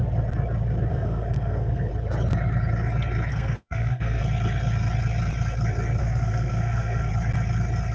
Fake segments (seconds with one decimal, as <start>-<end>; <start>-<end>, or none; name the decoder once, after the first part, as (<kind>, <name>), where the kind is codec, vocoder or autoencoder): 0.9-1.9 (codec, SNAC); 3.3-4.2; 6.0-7.1

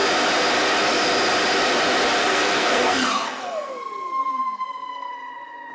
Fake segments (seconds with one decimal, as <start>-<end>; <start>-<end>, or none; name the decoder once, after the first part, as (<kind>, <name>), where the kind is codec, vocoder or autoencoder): 2.2-5.1 (codec, SNAC)

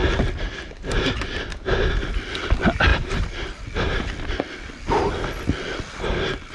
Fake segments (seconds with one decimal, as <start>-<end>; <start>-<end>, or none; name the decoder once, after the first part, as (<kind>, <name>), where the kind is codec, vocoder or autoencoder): none